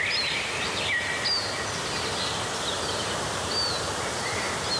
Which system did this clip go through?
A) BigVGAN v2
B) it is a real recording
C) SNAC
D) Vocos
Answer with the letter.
B